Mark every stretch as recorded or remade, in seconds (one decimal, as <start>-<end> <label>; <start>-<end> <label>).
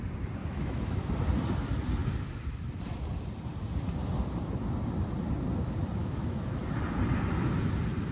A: 0.0-0.4 recorded; 0.4-1.1 remade; 1.1-6.0 recorded; 6.0-6.6 remade; 6.6-8.1 recorded